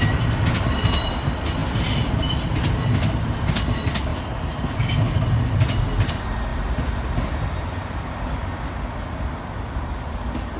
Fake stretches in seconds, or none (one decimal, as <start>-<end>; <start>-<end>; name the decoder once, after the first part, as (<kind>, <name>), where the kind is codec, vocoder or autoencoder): none